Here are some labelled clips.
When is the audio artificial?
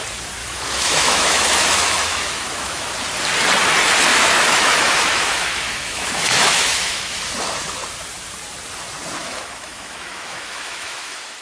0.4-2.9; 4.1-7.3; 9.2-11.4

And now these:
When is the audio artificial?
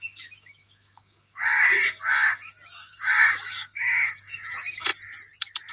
0.0-4.9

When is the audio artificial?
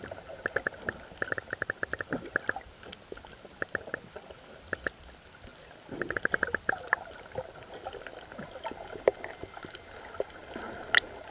none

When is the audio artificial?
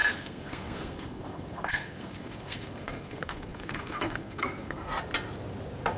0.0-4.9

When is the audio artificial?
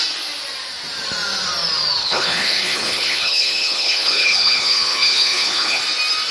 2.0-5.8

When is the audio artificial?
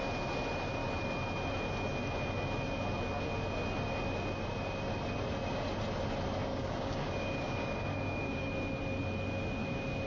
6.5-8.5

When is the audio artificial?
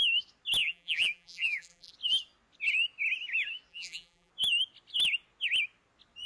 0.6-1.9; 3.7-4.3